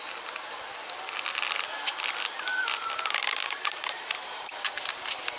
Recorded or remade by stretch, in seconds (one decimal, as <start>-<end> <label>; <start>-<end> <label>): 0.0-3.4 recorded; 3.4-4.6 remade; 4.6-5.4 recorded